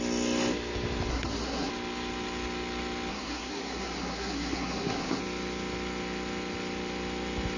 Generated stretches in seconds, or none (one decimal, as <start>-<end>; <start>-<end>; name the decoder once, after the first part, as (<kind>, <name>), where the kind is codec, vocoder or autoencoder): 1.1-1.7 (codec, SNAC); 3.1-5.2